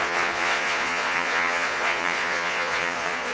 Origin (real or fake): fake